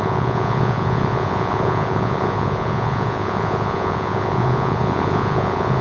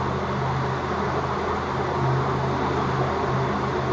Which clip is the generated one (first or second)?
first